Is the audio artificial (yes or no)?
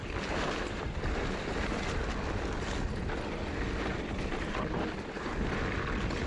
no